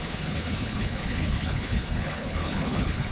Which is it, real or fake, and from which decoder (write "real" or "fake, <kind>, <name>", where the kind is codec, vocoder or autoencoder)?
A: fake, codec, HILCodec